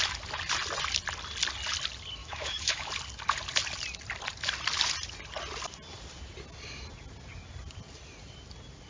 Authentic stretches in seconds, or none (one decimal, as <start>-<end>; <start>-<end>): 0.0-2.2; 2.9-8.9